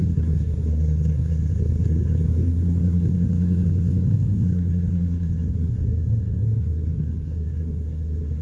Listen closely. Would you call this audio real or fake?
fake